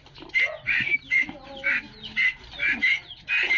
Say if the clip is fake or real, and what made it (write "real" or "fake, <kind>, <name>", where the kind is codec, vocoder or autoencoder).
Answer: real